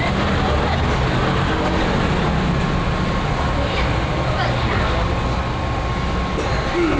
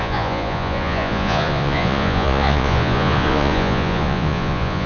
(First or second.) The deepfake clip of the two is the second